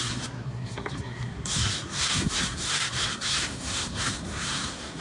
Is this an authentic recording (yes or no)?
no